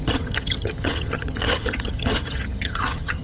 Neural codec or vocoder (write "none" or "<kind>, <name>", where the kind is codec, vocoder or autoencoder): vocoder, HiFi-GAN